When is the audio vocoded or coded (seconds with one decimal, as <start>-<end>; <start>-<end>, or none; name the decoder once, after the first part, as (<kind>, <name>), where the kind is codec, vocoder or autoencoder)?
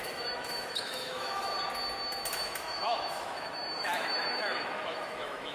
0.0-1.5 (autoencoder, DAC-VAE); 2.3-5.5